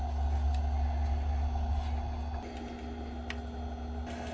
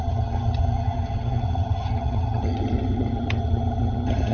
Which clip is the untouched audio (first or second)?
first